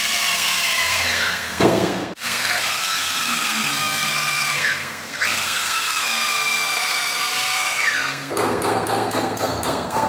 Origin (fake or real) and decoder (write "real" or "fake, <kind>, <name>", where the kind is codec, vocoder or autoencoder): fake, codec, SNAC